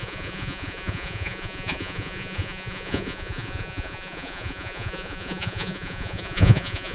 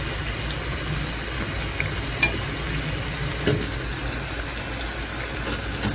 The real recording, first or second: second